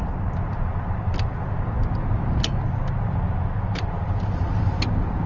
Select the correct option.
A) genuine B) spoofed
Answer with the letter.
A